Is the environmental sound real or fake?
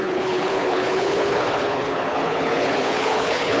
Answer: fake